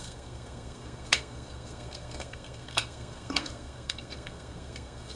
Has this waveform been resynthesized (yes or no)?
yes